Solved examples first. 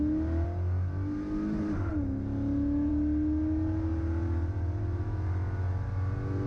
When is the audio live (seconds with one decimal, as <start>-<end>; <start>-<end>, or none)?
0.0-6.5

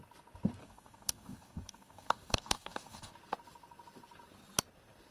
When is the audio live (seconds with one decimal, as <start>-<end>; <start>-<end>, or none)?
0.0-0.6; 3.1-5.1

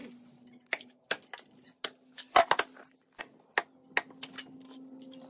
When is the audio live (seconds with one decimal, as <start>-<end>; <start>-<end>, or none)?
0.0-5.3